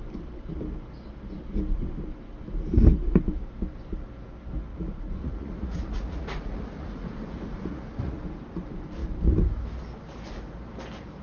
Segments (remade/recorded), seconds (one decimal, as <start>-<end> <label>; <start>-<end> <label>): 0.0-4.7 recorded; 4.7-8.2 remade; 8.2-11.2 recorded

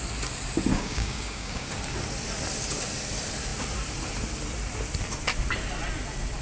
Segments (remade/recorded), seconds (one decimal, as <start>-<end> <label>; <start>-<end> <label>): 0.0-0.7 recorded; 0.7-1.7 remade; 1.7-6.4 recorded

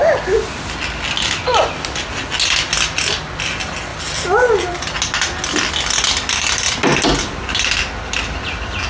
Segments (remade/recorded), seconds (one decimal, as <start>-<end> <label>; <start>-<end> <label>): 0.0-8.9 recorded

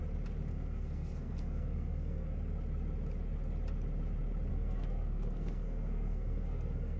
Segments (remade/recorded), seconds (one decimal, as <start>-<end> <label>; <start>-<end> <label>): 0.0-0.5 recorded; 0.5-2.3 remade; 2.3-4.5 recorded; 4.5-7.0 remade

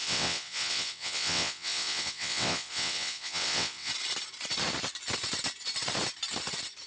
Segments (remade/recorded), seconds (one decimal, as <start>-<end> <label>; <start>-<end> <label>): 0.0-3.9 remade; 3.9-6.9 recorded

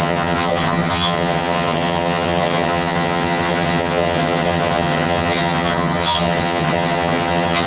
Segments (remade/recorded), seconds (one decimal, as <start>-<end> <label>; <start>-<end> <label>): 0.0-7.7 remade